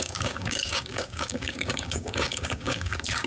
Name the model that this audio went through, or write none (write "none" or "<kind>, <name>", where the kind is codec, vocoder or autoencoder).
codec, DAC